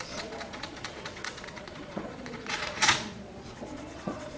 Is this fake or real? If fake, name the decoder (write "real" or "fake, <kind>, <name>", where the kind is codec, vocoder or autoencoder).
fake, vocoder, Vocos